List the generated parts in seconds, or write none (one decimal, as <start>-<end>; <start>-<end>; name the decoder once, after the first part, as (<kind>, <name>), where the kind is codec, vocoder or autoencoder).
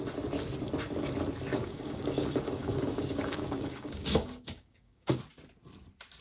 1.5-5.2 (codec, DAC)